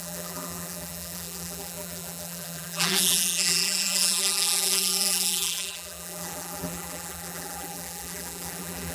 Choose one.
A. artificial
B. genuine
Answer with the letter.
A